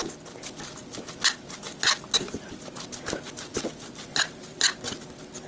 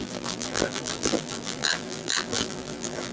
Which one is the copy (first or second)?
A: second